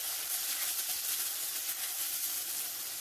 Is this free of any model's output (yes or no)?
yes